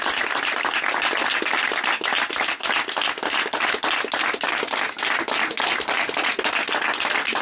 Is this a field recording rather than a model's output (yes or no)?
yes